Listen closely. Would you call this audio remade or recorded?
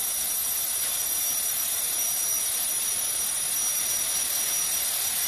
recorded